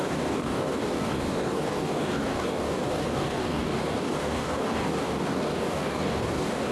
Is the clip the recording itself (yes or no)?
no